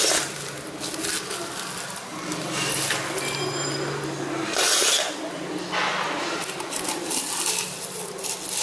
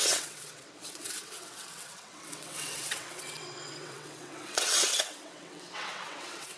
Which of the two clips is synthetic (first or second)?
second